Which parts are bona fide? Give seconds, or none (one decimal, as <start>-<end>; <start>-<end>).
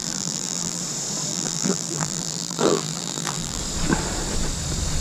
0.8-1.3; 3.6-5.0